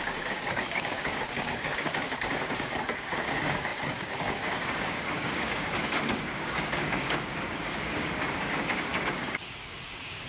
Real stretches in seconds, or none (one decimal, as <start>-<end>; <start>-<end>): none